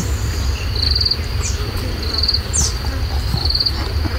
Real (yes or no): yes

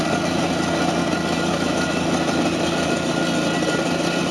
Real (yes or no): yes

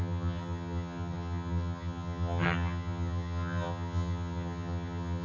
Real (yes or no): no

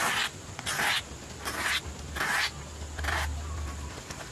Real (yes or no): yes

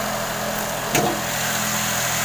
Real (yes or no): yes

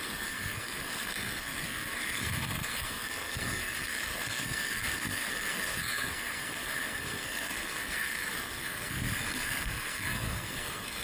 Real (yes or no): no